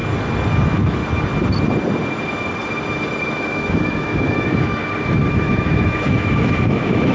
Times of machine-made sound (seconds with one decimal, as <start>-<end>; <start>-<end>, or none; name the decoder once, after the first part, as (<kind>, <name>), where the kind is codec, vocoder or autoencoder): 0.6-1.0 (autoencoder, DAC-VAE); 3.2-4.8; 5.3-7.1